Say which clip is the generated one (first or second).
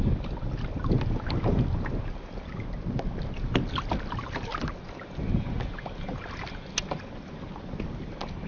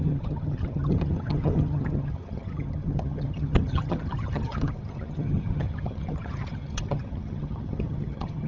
second